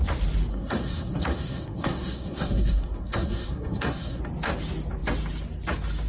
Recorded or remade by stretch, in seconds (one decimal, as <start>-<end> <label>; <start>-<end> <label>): 0.0-0.5 recorded; 0.5-4.2 remade; 4.2-6.1 recorded